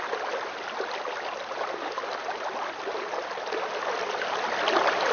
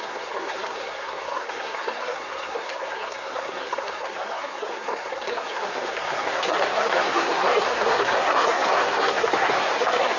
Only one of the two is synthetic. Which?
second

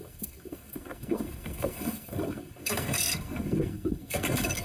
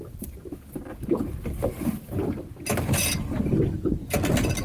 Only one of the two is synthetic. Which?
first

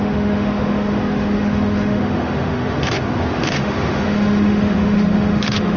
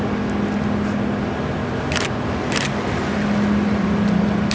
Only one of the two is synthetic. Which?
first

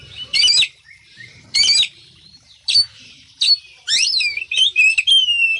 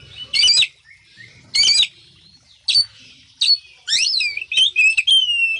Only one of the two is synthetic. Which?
first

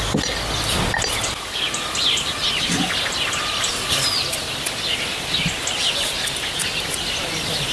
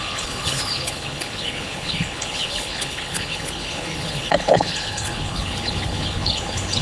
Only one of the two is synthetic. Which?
second